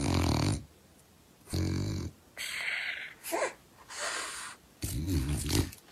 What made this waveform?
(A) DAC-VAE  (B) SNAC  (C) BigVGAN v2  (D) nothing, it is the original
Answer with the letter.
D